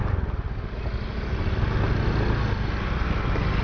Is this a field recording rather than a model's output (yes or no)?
yes